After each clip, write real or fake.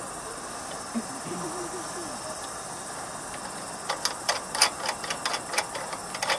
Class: real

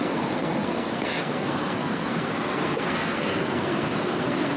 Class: fake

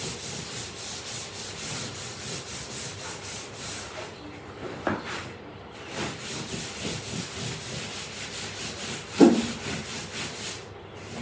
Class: fake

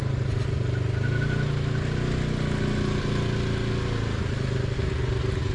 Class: real